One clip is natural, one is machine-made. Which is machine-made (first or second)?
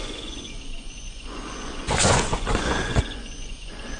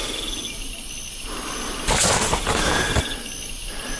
first